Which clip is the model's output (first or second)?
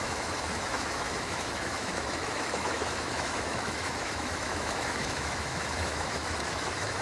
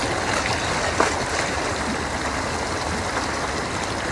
first